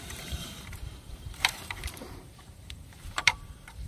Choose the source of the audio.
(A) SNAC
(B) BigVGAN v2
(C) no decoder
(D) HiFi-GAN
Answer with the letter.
B